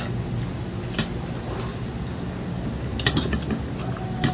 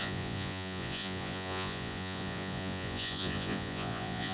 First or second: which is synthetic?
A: second